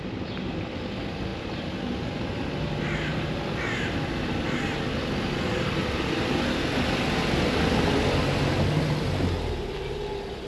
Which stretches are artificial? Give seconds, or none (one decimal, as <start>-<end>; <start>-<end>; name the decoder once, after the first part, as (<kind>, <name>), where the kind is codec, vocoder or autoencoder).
none